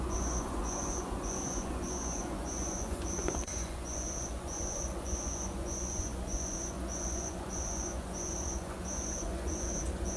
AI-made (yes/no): yes